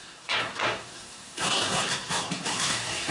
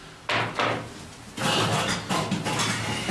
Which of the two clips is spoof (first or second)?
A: first